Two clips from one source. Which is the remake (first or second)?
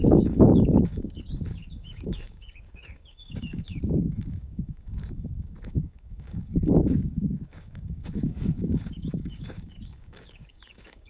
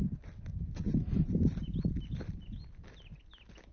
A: first